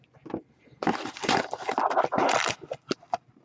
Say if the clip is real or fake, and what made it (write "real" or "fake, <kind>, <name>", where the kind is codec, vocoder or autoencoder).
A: fake, vocoder, BigVGAN v2